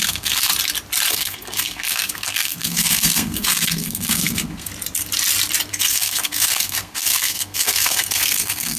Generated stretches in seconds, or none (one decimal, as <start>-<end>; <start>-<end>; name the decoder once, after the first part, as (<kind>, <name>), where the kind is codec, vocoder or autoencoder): 0.0-0.5 (codec, SNAC); 1.1-4.7; 5.7-8.8